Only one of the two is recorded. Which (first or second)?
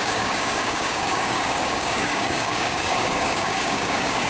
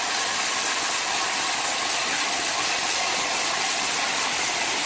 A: second